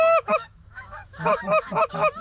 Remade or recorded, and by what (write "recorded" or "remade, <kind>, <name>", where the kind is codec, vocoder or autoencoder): remade, autoencoder, DAC-VAE